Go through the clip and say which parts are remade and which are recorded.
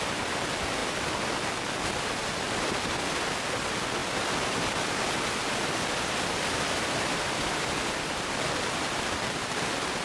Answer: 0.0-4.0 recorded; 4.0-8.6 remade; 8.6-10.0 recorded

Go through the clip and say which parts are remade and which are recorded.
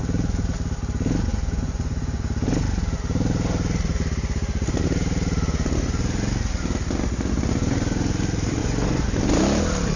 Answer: 0.0-1.3 recorded; 1.3-2.2 remade; 2.2-8.6 recorded; 8.6-9.2 remade; 9.2-10.0 recorded